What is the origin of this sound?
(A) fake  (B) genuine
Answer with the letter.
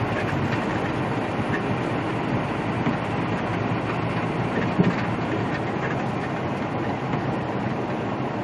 B